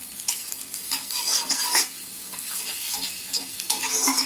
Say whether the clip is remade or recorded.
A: remade